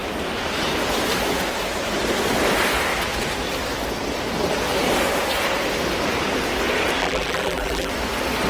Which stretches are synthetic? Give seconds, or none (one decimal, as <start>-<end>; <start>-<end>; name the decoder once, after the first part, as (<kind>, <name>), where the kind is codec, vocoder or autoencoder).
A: 7.0-7.9 (vocoder, BigVGAN v2)